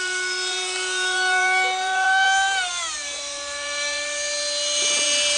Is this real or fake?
fake